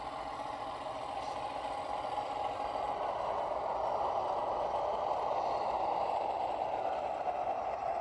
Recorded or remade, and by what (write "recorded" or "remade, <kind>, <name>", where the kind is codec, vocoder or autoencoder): recorded